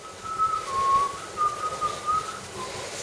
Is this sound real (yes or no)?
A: yes